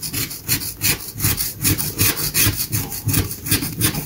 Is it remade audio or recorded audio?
recorded